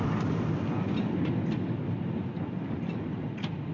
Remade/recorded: recorded